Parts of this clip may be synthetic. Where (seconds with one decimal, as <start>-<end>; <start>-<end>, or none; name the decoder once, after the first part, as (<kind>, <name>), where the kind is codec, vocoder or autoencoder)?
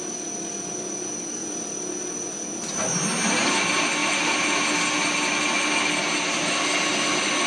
none